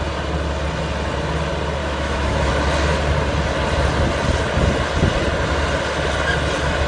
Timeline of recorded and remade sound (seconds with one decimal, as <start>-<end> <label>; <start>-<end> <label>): 0.0-1.8 recorded; 1.8-2.5 remade; 2.5-6.9 recorded